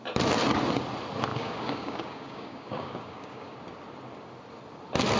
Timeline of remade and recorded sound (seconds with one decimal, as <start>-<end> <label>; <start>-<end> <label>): 0.0-1.3 recorded; 1.3-3.5 remade; 3.5-5.2 recorded